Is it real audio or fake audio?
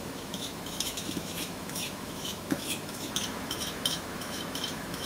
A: fake